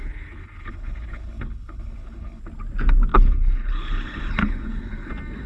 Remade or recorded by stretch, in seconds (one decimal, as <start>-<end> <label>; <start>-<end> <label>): 0.0-2.4 remade; 2.4-3.1 recorded; 3.1-5.1 remade; 5.1-5.5 recorded